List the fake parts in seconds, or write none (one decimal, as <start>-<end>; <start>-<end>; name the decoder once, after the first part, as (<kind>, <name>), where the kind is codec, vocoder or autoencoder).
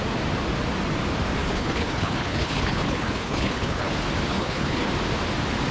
1.4-3.9 (codec, HILCodec); 4.3-4.9